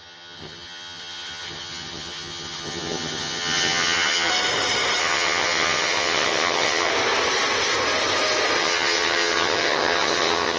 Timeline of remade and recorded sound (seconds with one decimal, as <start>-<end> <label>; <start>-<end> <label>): 0.0-4.3 remade; 4.3-5.0 recorded; 5.0-6.9 remade; 6.9-8.6 recorded; 8.6-10.6 remade